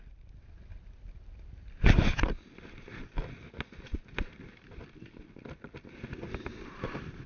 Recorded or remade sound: recorded